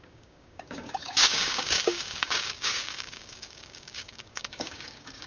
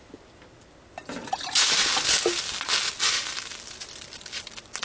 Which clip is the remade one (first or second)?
first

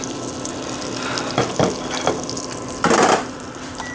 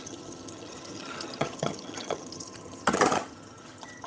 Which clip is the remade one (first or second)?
second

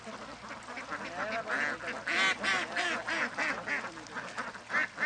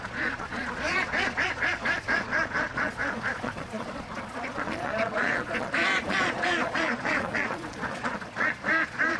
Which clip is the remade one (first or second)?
second